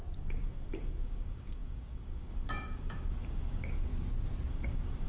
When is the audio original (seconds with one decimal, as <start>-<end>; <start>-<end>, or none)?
3.9-4.5

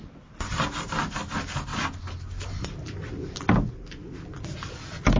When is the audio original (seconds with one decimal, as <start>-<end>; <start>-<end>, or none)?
0.0-5.2

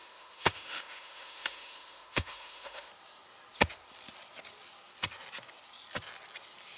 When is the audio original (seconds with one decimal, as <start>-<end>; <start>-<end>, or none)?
2.9-6.8

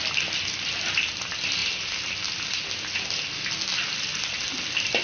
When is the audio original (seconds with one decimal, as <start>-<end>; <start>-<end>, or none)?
0.0-5.0

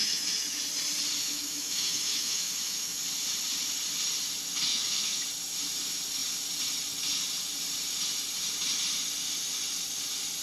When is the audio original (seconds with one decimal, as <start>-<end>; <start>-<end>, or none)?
0.6-1.2; 3.0-4.7; 5.2-10.4

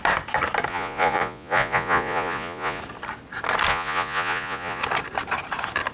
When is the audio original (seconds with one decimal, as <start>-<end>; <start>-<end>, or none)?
0.0-0.7; 2.8-3.7; 4.8-5.9

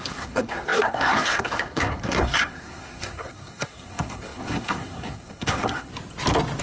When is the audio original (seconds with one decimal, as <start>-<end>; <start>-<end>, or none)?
5.9-6.6

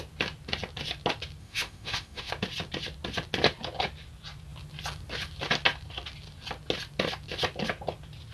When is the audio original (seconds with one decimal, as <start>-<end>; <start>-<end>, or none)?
0.0-1.4; 2.3-8.3